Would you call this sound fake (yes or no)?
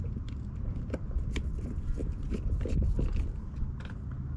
no